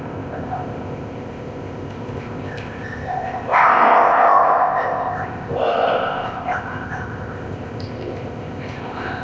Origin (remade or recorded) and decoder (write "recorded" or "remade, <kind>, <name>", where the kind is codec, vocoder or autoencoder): remade, codec, ZipCodec